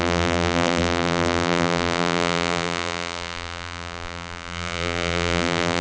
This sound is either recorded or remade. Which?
remade